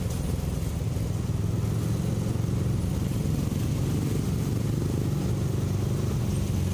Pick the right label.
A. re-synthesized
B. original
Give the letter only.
B